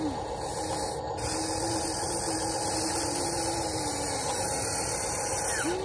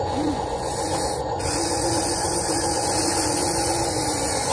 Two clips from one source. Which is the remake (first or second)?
second